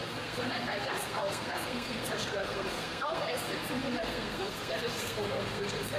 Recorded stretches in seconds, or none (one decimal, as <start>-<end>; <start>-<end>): none

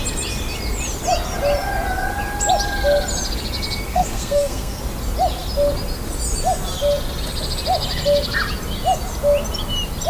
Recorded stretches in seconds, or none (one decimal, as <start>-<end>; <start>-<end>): 0.0-3.9; 4.8-10.1

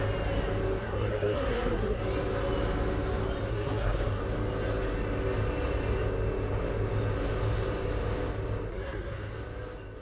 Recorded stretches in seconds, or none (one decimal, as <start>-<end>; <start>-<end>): 0.0-0.8; 2.0-3.5; 4.2-8.7; 9.3-10.0

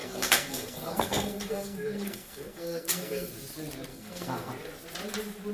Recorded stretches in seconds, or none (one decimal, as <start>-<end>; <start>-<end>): 3.3-3.9; 4.5-5.5

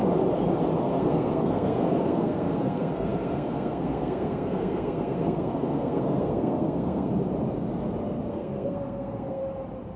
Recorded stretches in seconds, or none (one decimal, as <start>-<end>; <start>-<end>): 0.0-0.8; 7.1-8.3; 9.4-10.0

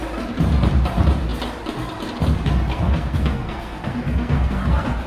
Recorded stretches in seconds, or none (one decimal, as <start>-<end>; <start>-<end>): 0.0-2.7

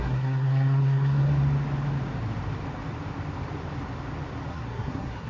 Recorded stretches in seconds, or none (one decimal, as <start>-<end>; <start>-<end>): 1.3-4.5